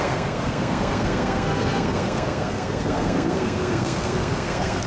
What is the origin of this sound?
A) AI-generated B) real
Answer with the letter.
A